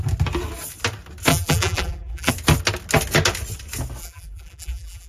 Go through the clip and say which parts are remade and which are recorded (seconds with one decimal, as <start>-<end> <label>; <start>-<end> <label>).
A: 0.0-1.3 recorded; 1.3-2.3 remade; 2.3-4.0 recorded; 4.0-5.1 remade